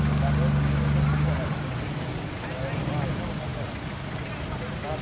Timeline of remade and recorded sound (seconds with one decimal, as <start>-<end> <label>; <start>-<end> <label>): 0.0-5.0 recorded